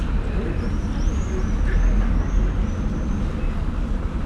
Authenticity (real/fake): real